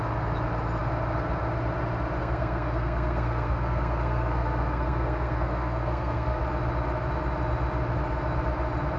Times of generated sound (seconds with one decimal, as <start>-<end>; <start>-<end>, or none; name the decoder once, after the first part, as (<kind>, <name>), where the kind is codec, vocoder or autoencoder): 2.2-6.4 (codec, SNAC)